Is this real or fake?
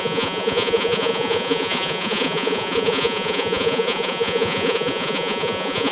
fake